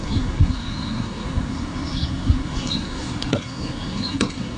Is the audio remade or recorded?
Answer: remade